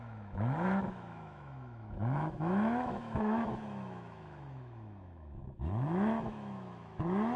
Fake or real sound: fake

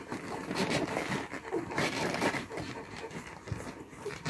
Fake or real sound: fake